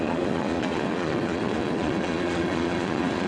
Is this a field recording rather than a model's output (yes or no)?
no